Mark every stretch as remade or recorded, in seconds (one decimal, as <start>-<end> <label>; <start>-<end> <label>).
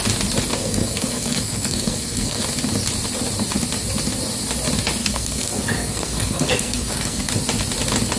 0.0-0.6 recorded; 0.6-2.4 remade; 2.4-5.0 recorded; 5.0-7.3 remade; 7.3-8.2 recorded